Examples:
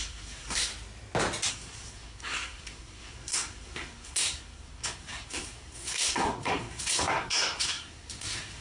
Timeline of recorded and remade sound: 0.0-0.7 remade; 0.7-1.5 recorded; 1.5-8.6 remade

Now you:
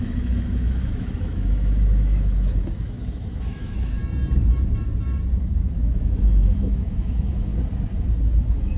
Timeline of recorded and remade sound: 0.0-4.0 remade; 4.0-5.4 recorded; 5.4-7.5 remade; 7.5-8.4 recorded; 8.4-8.8 remade